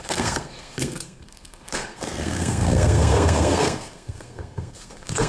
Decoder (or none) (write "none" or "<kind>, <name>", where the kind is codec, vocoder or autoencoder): codec, SNAC